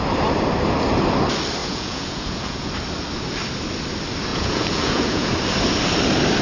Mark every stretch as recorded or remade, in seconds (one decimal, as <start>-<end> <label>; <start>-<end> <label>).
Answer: 0.0-1.6 recorded; 1.6-2.7 remade; 2.7-4.3 recorded; 4.3-5.3 remade; 5.3-6.4 recorded